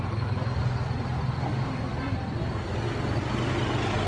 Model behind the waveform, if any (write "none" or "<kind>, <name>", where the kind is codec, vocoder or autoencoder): none